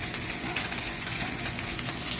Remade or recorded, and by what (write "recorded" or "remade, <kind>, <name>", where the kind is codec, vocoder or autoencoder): remade, vocoder, Vocos